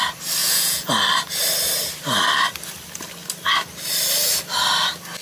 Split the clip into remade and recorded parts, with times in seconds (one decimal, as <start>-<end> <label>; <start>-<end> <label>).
0.0-0.4 recorded; 0.4-0.9 remade; 0.9-5.2 recorded